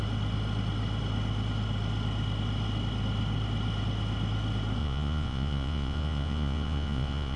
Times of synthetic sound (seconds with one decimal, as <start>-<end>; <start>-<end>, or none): 4.8-7.4